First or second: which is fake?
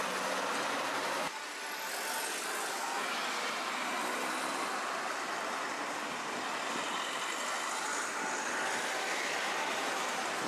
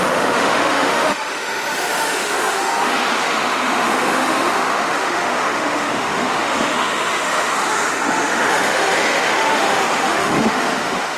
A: second